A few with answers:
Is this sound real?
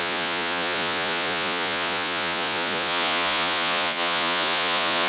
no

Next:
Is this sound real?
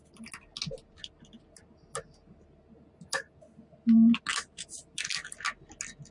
yes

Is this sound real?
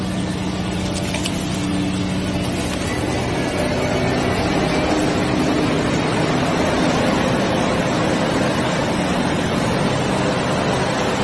yes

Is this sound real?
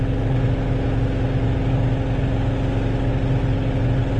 yes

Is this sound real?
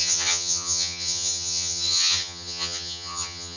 no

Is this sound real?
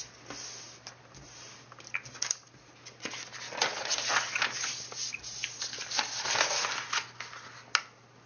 yes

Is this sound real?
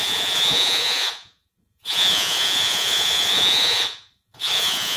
no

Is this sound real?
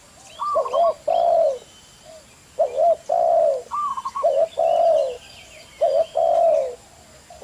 yes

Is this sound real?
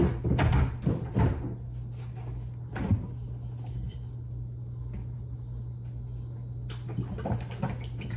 yes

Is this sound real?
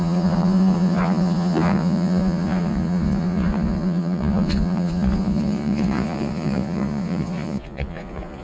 no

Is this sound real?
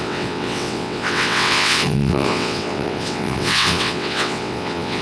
no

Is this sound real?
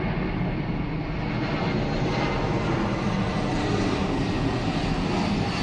yes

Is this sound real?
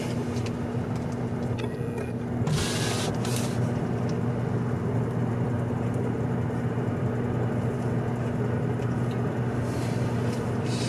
yes